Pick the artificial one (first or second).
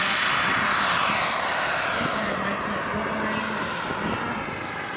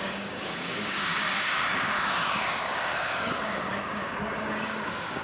second